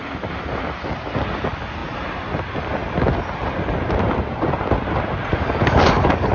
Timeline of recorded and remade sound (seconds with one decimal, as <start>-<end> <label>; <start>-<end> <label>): 0.0-5.3 recorded; 5.3-6.3 remade